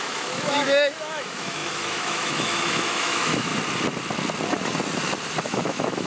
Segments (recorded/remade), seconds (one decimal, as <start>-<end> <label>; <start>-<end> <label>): 0.0-3.5 remade; 3.5-5.4 recorded; 5.4-6.1 remade